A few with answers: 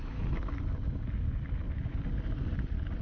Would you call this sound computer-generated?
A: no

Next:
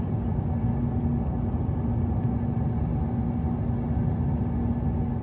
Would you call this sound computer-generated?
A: no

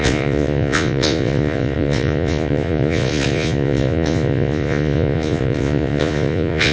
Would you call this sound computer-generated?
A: yes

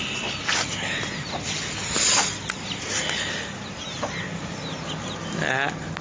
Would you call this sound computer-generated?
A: no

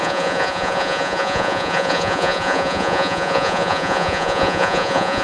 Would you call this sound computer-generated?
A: yes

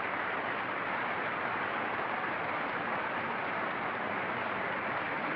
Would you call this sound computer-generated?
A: no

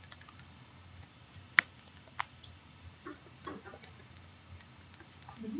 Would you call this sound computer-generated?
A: no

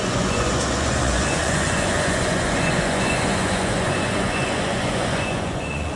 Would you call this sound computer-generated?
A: yes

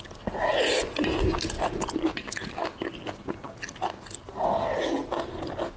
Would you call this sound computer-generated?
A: no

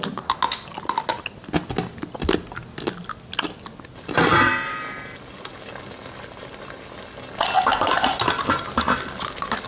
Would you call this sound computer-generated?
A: no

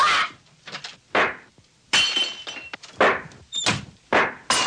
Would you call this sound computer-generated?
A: no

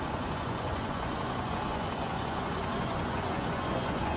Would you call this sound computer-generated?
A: yes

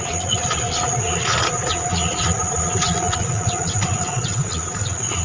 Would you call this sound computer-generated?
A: yes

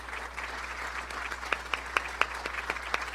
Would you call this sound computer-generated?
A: no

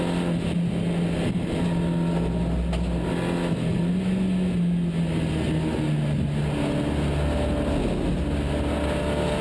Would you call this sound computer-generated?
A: no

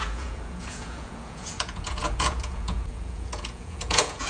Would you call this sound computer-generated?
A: yes